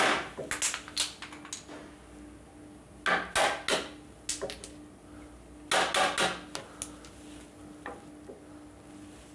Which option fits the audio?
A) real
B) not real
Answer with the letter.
A